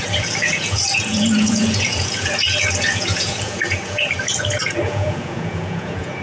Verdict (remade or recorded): remade